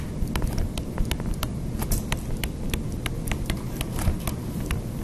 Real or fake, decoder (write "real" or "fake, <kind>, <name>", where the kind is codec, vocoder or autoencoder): real